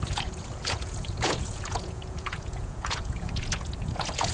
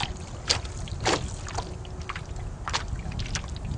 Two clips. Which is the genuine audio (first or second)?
second